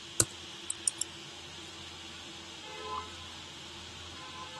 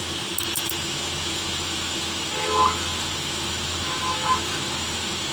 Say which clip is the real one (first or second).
first